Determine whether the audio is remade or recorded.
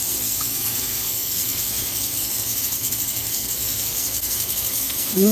remade